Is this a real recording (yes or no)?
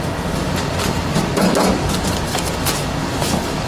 yes